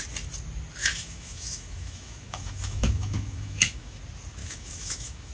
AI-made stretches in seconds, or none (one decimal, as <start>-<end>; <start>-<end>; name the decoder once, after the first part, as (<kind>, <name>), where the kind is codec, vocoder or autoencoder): 0.8-4.0 (autoencoder, DAC-VAE); 4.4-5.3